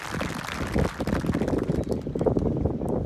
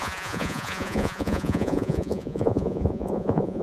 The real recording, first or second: first